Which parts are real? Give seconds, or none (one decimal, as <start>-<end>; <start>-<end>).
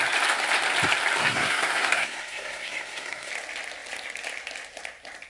0.0-1.2; 3.3-5.3